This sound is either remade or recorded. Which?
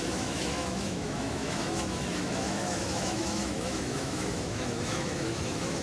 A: remade